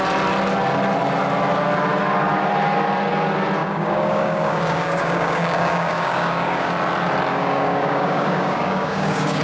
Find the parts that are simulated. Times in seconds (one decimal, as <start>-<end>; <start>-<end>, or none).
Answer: 3.6-6.7; 7.3-9.4